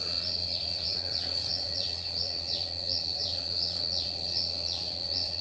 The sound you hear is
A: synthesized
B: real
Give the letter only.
A